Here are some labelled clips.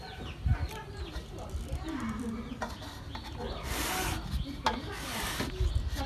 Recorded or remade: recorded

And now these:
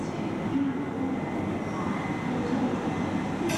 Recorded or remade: recorded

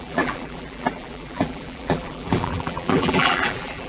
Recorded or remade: remade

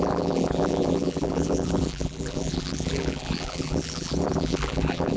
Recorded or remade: remade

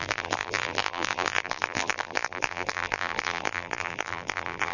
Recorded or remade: remade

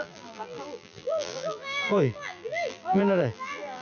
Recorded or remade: remade